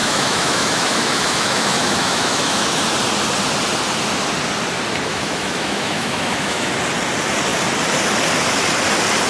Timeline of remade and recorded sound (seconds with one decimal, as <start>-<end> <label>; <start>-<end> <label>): 0.0-2.8 remade; 2.8-5.1 recorded; 5.1-6.7 remade; 6.7-9.3 recorded